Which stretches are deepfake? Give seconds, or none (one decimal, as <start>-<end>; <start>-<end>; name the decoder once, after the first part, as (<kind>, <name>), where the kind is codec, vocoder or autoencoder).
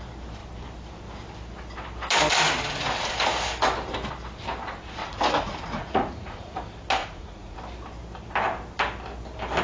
5.0-6.6 (vocoder, Vocos); 7.0-7.6